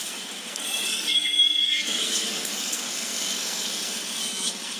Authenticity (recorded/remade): remade